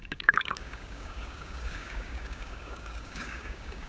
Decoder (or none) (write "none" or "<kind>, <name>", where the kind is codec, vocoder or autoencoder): codec, DAC